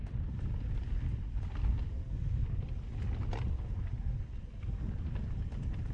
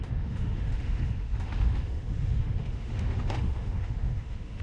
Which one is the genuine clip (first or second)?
first